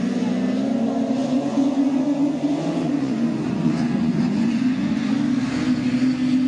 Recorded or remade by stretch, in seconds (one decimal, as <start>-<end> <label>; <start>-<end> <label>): 0.0-1.2 recorded; 1.2-5.1 remade; 5.1-6.5 recorded